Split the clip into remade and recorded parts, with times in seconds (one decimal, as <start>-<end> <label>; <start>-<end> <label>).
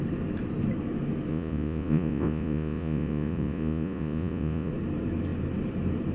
0.0-1.3 recorded; 1.3-4.7 remade; 4.7-6.1 recorded